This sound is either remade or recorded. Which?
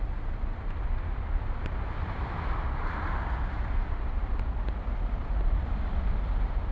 remade